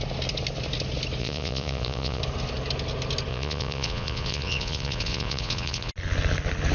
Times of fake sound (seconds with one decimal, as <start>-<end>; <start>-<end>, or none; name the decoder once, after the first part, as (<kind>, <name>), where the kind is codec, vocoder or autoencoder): 1.2-2.2 (vocoder, Vocos); 3.3-5.9